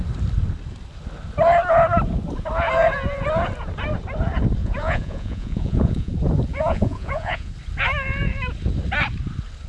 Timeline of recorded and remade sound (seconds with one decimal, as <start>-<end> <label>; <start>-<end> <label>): 0.0-4.6 recorded; 4.6-6.1 remade; 6.1-6.5 recorded; 6.5-7.5 remade; 7.5-9.7 recorded